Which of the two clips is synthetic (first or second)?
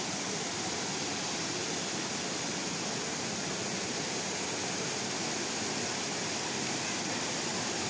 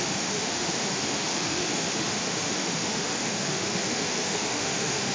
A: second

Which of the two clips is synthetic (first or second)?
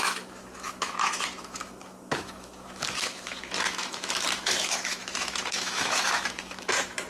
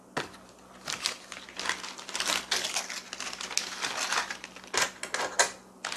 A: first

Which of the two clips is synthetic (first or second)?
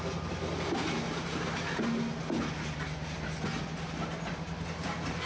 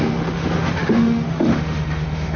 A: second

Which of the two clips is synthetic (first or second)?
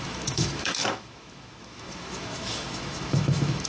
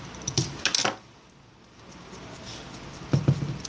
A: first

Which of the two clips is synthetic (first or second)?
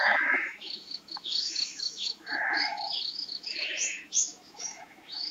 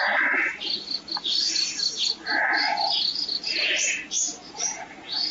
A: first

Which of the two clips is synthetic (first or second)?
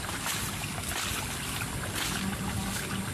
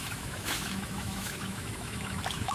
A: second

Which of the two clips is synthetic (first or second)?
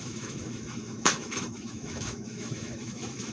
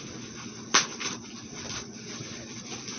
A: first